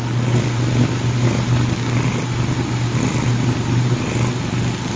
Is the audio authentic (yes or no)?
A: yes